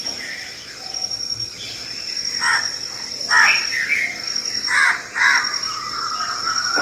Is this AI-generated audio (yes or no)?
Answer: no